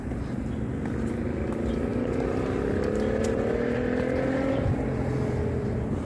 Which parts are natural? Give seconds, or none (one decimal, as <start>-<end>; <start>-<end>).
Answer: 0.0-6.1